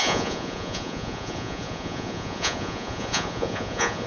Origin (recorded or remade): remade